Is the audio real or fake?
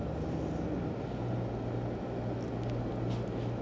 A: real